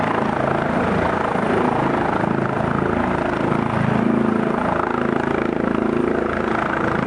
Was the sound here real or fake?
real